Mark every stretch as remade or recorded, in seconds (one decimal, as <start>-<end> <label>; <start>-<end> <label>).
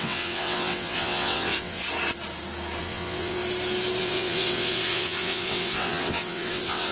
0.0-1.8 remade; 1.8-2.8 recorded; 2.8-3.4 remade; 3.4-4.0 recorded; 4.0-6.9 remade